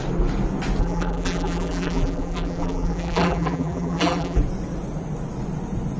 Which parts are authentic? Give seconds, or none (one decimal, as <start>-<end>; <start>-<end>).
0.0-0.8; 4.4-6.0